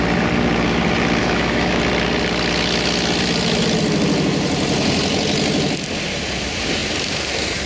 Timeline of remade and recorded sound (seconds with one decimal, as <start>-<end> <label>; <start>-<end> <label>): 0.0-1.2 recorded; 1.2-1.8 remade; 1.8-7.7 recorded